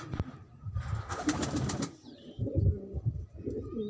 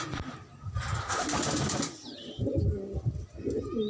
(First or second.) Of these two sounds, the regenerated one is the first